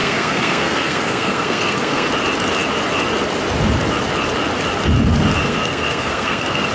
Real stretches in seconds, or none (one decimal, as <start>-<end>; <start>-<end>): 2.1-5.4